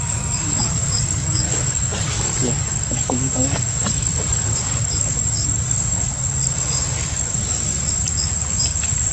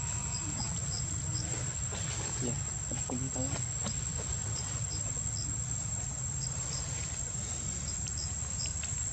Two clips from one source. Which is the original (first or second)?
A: second